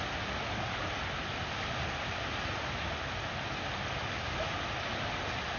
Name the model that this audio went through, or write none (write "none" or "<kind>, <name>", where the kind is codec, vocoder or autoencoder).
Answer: none